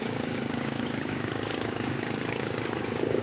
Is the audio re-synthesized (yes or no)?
yes